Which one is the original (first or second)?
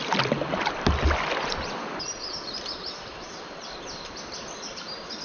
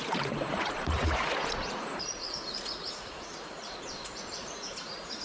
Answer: first